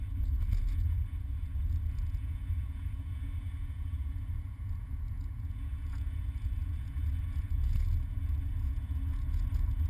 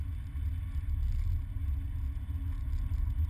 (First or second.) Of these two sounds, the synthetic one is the first